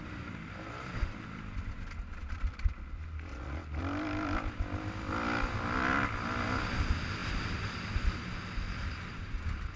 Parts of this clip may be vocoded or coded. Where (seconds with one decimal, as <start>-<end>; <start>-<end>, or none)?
3.3-3.8